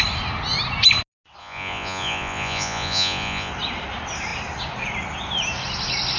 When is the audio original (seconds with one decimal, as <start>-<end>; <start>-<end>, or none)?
0.0-1.4; 3.5-6.2